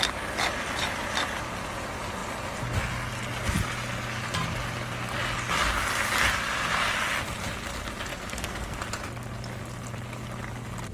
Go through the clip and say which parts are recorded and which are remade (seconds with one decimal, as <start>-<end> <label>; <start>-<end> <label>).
0.0-8.1 recorded; 8.1-8.8 remade; 8.8-10.9 recorded

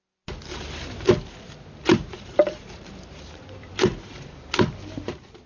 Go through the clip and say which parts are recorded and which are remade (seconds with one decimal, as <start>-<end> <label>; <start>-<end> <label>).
0.0-0.5 recorded; 0.5-1.1 remade; 1.1-1.9 recorded; 1.9-4.3 remade; 4.3-5.5 recorded